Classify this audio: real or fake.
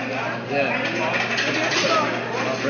real